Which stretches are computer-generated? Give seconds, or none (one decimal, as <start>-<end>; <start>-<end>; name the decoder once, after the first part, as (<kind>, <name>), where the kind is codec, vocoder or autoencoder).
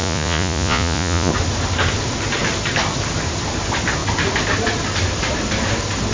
0.0-1.3 (vocoder, Vocos)